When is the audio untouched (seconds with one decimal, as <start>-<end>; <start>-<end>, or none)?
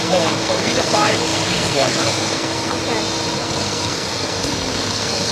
2.8-3.4